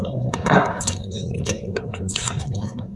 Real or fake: fake